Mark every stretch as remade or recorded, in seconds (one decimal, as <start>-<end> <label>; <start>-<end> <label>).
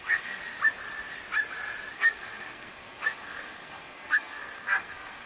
0.0-0.4 remade; 0.4-1.9 recorded; 1.9-5.3 remade